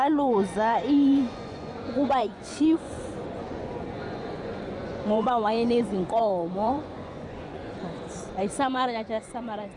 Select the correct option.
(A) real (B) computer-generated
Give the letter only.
B